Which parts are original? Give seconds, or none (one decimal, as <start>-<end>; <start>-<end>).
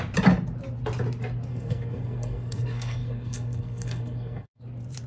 0.0-1.5; 4.6-5.1